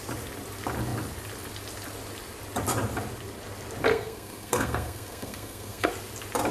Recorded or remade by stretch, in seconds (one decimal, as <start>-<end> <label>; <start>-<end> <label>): 0.0-3.9 recorded; 3.9-5.9 remade; 5.9-6.5 recorded